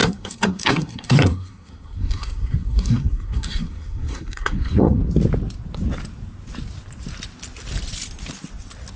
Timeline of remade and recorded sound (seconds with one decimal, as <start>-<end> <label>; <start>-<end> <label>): 0.0-5.0 remade; 5.0-9.0 recorded